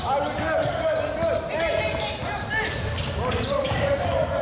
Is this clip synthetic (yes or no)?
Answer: no